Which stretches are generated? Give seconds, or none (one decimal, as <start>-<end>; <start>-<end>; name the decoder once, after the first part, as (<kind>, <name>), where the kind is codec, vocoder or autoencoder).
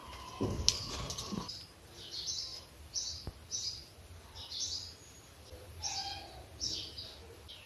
2.5-5.6 (vocoder, BigVGAN v2)